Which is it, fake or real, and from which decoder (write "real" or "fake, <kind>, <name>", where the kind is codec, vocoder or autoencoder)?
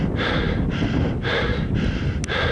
real